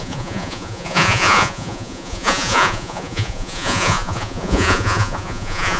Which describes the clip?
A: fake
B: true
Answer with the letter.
A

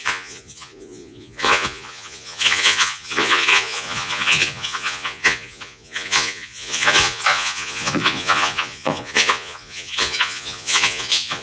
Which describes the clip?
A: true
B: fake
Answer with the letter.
B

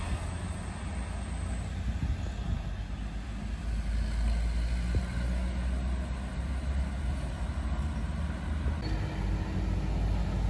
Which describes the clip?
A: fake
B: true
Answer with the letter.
B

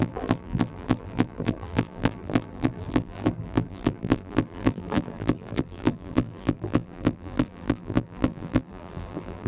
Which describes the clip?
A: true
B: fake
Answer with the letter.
B